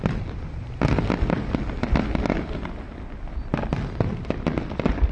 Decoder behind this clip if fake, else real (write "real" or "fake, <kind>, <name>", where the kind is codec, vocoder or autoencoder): real